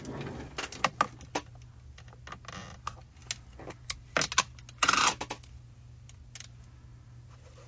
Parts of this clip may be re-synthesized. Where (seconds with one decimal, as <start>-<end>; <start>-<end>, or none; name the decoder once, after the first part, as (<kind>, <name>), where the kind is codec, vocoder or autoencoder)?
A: none